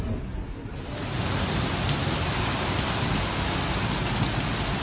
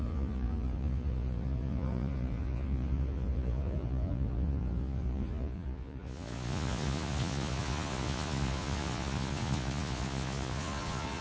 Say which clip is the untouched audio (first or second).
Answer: first